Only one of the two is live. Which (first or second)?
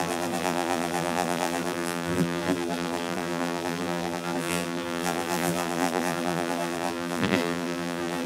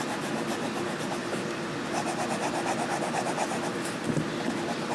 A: second